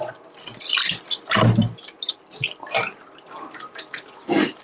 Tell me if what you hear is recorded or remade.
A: recorded